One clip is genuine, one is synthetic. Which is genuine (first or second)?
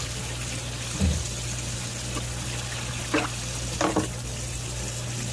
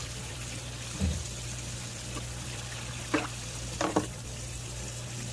first